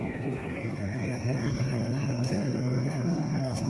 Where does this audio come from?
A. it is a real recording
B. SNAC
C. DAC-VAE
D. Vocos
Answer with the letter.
B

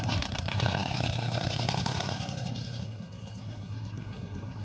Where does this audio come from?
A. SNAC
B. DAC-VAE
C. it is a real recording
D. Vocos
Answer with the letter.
A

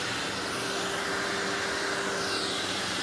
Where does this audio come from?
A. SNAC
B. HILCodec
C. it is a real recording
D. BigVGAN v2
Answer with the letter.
C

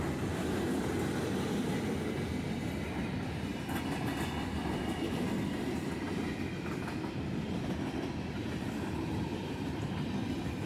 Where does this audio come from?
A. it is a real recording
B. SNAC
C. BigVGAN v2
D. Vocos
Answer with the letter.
A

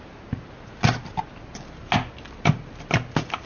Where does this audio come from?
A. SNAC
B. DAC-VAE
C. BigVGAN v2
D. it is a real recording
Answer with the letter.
D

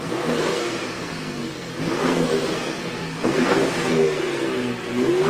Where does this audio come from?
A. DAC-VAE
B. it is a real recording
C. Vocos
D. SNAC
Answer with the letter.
D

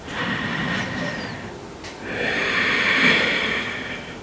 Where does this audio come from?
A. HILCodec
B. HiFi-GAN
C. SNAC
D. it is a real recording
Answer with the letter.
D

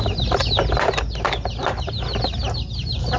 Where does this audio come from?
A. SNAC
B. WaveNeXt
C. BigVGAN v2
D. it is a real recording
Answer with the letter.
D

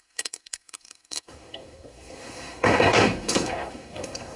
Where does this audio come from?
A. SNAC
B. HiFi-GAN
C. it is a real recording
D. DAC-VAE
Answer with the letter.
A